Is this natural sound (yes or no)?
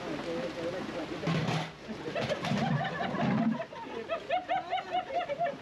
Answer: yes